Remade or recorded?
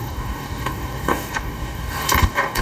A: remade